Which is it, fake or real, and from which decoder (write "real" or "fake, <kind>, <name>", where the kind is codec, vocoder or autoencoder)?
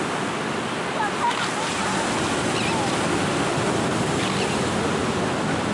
real